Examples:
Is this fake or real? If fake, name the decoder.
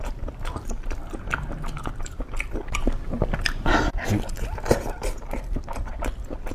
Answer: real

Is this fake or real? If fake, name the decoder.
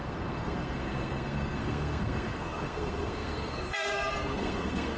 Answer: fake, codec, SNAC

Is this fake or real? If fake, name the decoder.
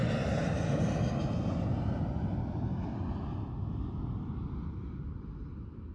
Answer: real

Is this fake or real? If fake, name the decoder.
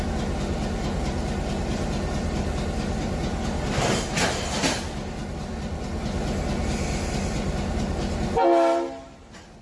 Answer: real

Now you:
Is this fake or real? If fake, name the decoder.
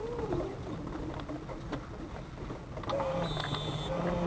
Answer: real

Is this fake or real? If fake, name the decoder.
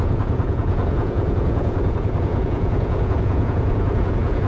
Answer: fake, vocoder, Vocos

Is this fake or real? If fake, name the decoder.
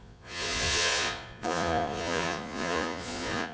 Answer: fake, vocoder, Vocos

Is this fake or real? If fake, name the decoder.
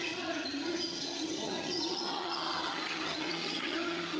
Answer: fake, vocoder, HiFi-GAN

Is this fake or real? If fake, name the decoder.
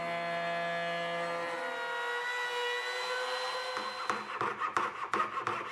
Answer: real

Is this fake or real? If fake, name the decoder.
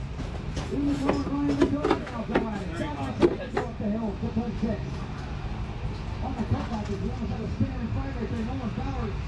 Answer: real